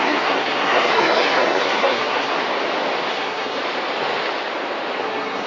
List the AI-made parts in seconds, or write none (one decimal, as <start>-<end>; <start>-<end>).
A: 0.0-2.3; 3.1-3.6; 5.0-5.5